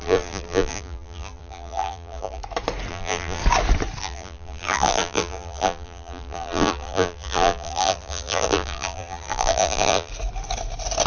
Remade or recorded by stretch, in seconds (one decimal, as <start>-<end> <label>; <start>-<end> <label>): 0.0-2.4 remade; 2.4-2.9 recorded; 2.9-3.4 remade; 3.4-4.0 recorded; 4.0-10.1 remade; 10.1-11.1 recorded